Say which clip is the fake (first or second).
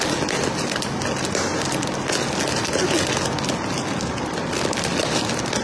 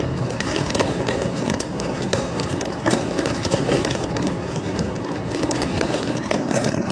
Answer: second